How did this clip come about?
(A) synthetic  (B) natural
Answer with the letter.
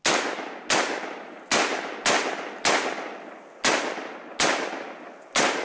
B